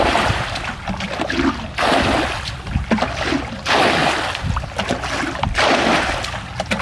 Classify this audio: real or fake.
real